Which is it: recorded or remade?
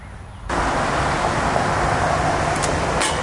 recorded